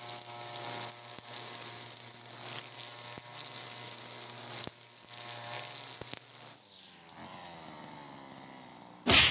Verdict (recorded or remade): recorded